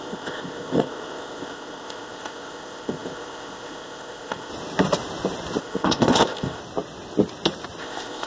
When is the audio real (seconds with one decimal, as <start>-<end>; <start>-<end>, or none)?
4.5-5.6; 6.6-7.8